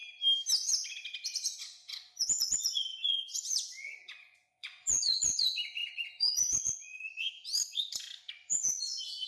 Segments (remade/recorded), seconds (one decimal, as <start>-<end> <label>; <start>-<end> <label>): 0.0-1.6 recorded; 1.6-9.3 remade